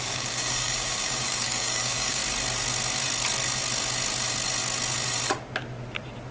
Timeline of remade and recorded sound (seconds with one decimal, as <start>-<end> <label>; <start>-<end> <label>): 0.0-2.2 remade; 2.2-6.3 recorded